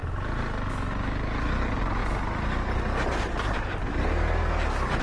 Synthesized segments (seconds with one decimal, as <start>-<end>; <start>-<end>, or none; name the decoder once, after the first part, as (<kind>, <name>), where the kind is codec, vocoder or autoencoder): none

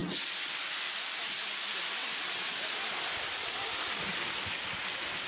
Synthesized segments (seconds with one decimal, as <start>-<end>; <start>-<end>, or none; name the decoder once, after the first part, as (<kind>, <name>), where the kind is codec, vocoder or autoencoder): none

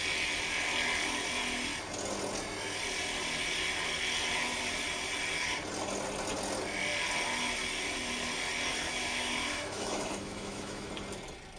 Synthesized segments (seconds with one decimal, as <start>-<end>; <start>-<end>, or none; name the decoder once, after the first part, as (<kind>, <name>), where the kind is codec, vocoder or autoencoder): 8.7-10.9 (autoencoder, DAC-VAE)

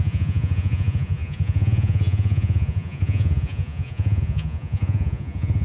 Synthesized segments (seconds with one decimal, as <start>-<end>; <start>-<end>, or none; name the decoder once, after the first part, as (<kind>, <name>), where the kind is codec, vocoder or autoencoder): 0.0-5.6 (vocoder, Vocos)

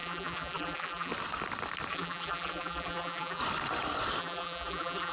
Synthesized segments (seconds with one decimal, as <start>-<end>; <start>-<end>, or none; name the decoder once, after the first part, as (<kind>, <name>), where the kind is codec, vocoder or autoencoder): 0.0-1.1 (vocoder, BigVGAN v2); 1.9-3.4; 4.2-5.1